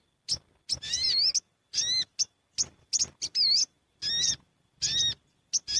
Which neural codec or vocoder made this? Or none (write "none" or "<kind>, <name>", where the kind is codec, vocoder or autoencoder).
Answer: none